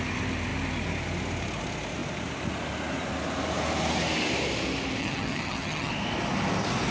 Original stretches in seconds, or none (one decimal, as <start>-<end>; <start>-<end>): 0.0-5.0; 5.9-6.9

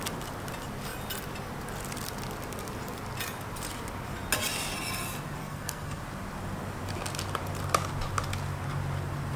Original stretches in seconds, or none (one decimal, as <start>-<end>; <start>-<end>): 0.0-5.4; 6.0-9.4